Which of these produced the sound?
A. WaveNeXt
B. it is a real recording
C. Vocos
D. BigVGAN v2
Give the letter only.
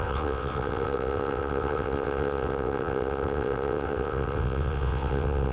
A